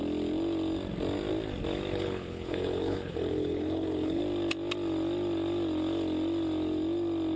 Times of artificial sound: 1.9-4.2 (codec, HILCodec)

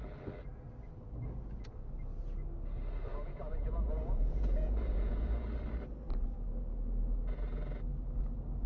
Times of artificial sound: 3.1-5.6 (vocoder, Vocos)

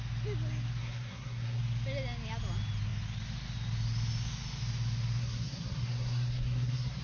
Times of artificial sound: 0.8-1.6 (codec, SNAC); 5.2-7.0

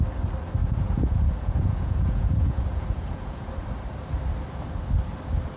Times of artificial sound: 0.6-3.5 (vocoder, Vocos)

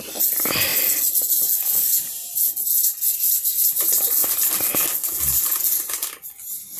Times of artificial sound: none

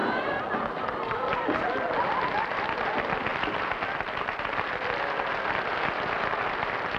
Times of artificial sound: none

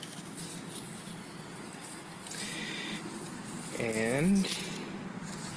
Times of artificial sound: none